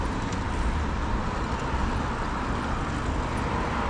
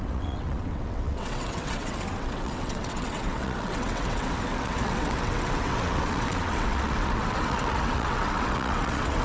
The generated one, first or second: second